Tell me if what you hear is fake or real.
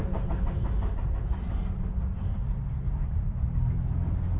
real